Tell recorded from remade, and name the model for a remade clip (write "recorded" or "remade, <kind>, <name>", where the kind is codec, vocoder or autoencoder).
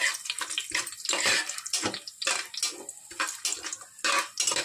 recorded